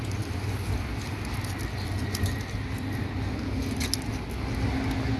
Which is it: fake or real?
real